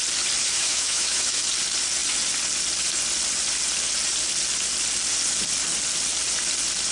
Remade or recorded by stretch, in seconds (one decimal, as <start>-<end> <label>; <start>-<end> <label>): 0.0-0.4 recorded; 0.4-1.4 remade; 1.4-6.9 recorded